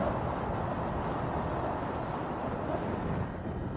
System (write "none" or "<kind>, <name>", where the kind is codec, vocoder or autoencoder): none